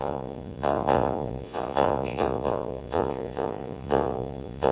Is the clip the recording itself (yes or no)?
no